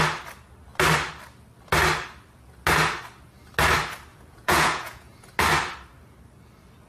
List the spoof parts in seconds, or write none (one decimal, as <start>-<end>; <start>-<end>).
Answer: 4.1-5.3